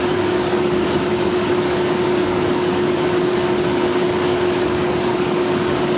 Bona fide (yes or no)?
no